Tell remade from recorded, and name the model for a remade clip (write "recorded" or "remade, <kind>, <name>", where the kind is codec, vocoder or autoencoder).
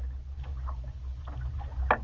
recorded